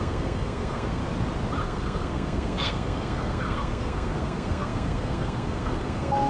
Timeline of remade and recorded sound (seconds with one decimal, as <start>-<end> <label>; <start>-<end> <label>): 0.0-1.0 remade; 1.0-1.6 recorded; 1.6-6.3 remade